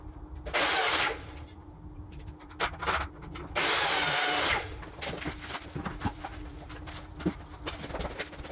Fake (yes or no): yes